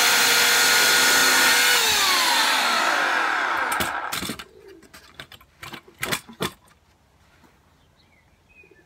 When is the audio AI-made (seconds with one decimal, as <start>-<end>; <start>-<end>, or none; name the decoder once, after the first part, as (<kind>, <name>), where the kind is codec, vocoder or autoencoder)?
none